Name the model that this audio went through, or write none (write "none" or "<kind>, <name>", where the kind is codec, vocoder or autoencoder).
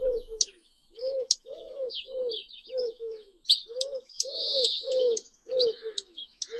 autoencoder, DAC-VAE